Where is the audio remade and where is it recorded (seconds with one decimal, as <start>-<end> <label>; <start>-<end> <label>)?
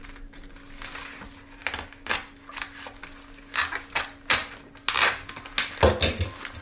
0.0-6.6 recorded